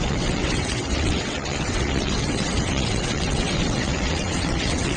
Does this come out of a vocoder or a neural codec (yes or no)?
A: yes